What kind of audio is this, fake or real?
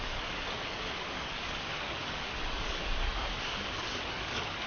fake